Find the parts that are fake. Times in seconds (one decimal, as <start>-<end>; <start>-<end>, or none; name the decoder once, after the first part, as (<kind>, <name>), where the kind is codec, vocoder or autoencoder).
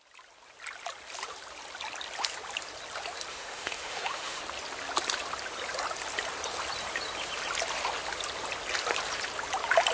3.3-4.4 (autoencoder, DAC-VAE)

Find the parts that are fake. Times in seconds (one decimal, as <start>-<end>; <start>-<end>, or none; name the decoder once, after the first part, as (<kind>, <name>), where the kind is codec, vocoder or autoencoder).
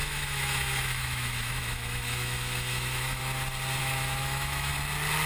0.0-3.2 (autoencoder, DAC-VAE); 3.8-4.7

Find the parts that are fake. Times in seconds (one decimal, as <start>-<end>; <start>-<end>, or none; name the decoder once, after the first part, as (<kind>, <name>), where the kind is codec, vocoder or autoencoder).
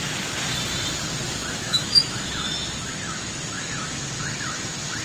1.4-4.1 (autoencoder, DAC-VAE)